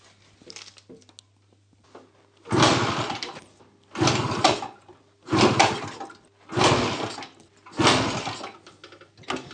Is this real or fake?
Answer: real